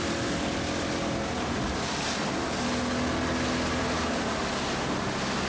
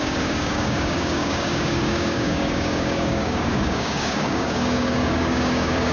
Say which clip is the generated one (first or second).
second